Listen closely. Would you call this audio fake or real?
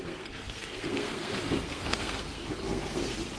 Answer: fake